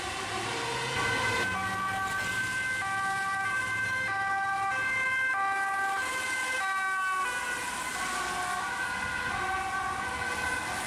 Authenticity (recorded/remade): recorded